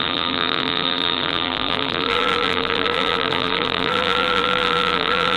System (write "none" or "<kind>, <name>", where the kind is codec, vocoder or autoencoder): vocoder, BigVGAN v2